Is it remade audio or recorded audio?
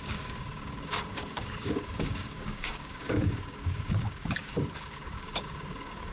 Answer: remade